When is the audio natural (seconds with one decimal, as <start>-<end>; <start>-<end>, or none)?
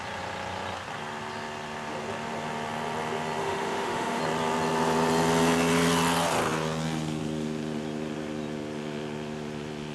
0.0-3.4; 4.2-9.9